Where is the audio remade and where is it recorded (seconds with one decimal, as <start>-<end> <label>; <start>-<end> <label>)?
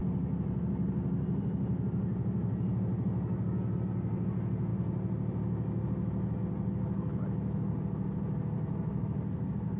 0.0-9.8 recorded